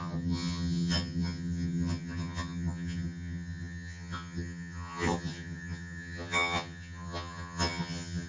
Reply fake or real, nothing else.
fake